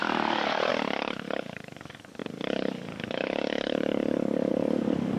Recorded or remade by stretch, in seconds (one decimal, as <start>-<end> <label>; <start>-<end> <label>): 0.0-5.2 remade